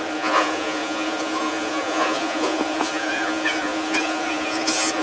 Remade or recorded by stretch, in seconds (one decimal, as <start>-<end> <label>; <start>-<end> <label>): 0.0-5.0 remade